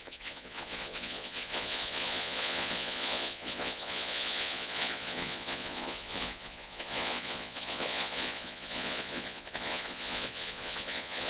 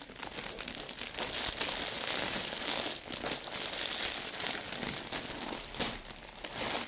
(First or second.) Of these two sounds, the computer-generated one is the first